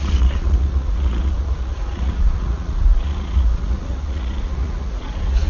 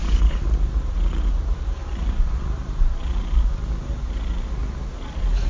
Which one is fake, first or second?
first